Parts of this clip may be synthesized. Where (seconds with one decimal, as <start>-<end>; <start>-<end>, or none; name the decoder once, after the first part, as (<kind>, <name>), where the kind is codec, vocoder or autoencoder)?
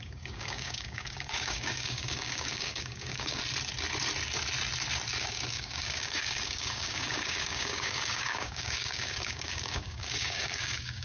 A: 0.0-3.4 (codec, DAC); 5.2-11.0